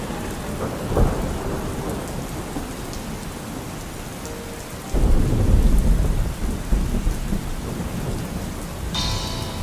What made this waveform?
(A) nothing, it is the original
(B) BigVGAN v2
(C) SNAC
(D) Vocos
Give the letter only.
A